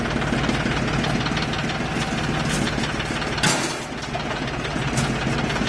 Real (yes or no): yes